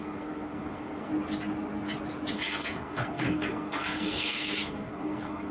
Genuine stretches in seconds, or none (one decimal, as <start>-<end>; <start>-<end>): 1.1-2.3

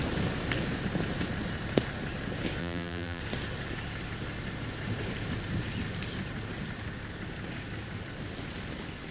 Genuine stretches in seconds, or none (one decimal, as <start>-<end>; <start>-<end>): 0.0-2.6; 3.2-9.1

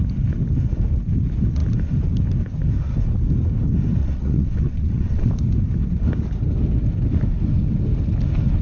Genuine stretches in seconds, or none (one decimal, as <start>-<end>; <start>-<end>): 0.0-4.0; 5.3-8.6